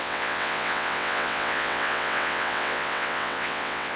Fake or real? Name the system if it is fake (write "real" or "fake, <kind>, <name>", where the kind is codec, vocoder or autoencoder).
fake, vocoder, WaveNeXt